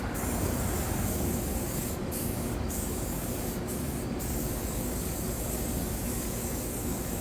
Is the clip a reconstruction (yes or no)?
yes